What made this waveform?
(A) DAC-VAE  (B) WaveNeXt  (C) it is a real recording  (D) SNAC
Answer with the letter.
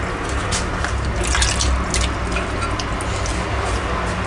C